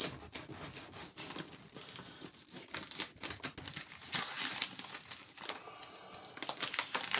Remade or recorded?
recorded